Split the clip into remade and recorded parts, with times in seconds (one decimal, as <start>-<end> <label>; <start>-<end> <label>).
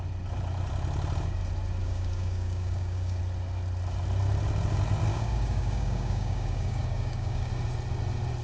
0.0-1.8 recorded; 1.8-3.2 remade; 3.2-5.1 recorded; 5.1-7.5 remade; 7.5-8.4 recorded